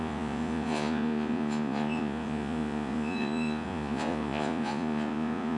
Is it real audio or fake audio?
fake